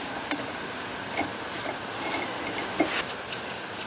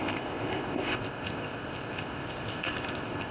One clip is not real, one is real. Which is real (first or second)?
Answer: first